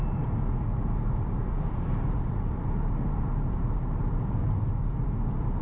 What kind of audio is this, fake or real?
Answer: fake